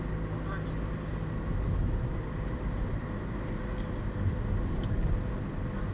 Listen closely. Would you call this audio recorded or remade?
recorded